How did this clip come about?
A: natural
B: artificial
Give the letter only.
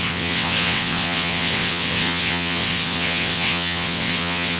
B